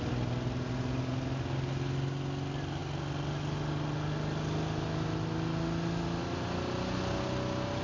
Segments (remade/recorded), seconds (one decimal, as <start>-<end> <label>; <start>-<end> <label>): 0.0-7.8 recorded